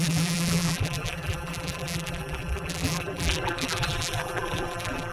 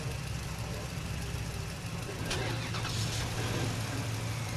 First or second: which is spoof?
first